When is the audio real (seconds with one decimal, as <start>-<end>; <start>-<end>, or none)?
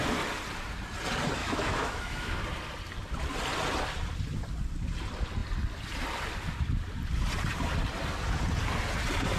0.0-1.4; 2.4-9.4